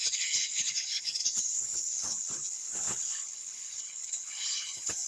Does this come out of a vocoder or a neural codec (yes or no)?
yes